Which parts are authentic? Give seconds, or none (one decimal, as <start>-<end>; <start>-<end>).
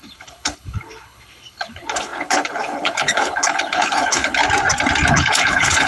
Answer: 4.4-5.1